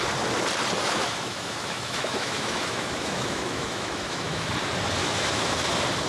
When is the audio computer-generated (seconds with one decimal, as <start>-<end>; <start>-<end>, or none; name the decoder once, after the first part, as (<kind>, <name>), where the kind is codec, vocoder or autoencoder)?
0.8-4.5 (autoencoder, DAC-VAE); 5.0-5.5